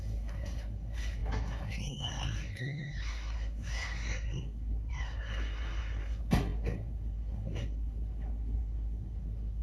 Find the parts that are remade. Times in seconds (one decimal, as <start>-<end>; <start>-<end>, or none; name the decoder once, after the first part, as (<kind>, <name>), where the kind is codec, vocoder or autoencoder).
0.0-9.6 (codec, SNAC)